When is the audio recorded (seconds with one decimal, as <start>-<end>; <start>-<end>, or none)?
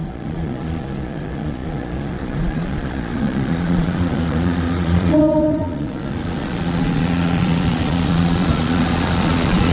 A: none